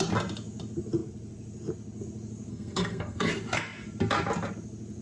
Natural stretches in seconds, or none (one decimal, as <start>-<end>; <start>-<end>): 0.0-2.5; 3.3-5.0